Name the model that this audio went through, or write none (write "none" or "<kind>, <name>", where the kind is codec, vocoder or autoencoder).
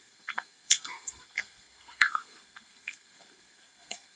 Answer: codec, SNAC